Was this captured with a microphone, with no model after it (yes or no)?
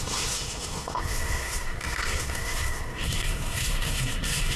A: no